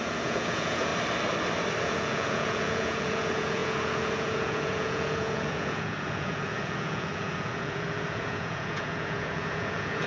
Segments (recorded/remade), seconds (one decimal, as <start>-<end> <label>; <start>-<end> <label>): 0.0-0.9 remade; 0.9-1.8 recorded; 1.8-10.1 remade